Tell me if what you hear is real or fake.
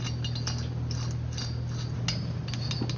real